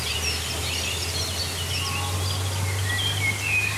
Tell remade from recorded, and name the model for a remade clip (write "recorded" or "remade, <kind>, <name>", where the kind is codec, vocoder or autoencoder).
recorded